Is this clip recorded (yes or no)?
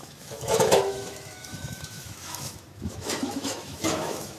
no